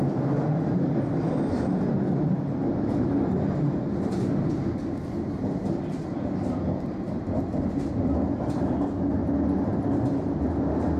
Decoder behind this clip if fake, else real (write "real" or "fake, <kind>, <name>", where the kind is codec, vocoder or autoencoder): real